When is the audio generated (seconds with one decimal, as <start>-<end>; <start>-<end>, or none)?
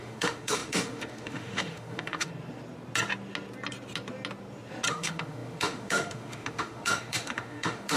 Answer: 0.0-2.3; 4.9-8.0